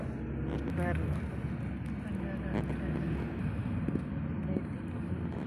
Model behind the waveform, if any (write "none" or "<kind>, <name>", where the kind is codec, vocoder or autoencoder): none